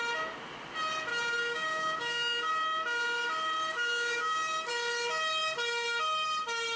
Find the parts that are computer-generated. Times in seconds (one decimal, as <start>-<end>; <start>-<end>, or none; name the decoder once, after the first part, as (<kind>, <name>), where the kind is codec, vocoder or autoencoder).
1.1-2.5 (codec, DAC); 3.7-4.7